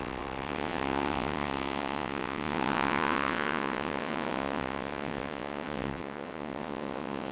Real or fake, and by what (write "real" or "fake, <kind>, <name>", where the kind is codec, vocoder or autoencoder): fake, vocoder, WaveNeXt